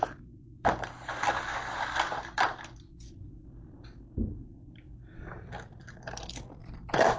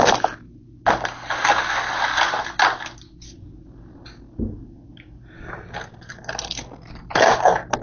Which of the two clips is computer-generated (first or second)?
first